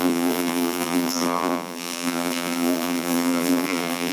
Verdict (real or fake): fake